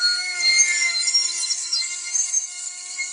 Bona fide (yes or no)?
no